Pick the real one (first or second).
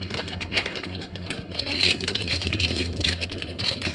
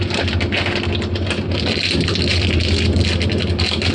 second